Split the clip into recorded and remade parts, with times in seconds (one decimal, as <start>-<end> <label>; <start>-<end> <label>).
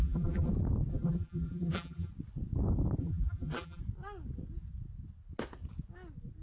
0.0-0.5 remade; 0.5-0.9 recorded; 0.9-2.1 remade; 2.1-3.0 recorded; 3.0-3.8 remade; 3.8-6.4 recorded